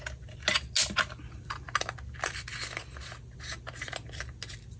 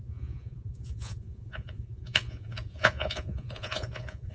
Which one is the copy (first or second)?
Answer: second